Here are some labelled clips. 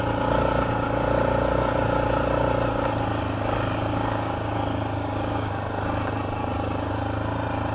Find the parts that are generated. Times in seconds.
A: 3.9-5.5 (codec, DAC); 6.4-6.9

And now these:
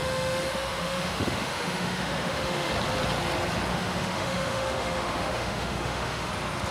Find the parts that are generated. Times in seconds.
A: 0.0-2.7 (autoencoder, DAC-VAE); 3.7-6.3

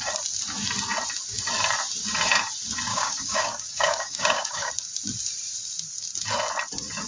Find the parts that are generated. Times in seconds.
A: 2.9-4.7 (codec, DAC)

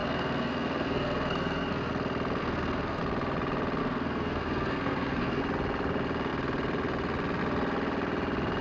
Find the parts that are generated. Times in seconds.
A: 0.0-1.9 (codec, SNAC); 2.4-3.0; 3.8-5.4

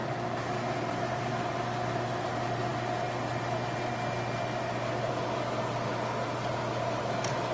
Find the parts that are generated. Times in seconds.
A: none

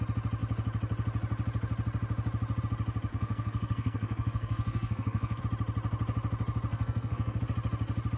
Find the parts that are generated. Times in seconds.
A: 3.1-5.4 (codec, SNAC); 6.7-7.4

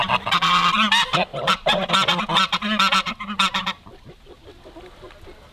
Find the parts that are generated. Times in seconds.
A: 1.3-1.9 (vocoder, BigVGAN v2)